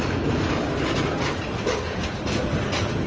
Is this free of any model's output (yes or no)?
yes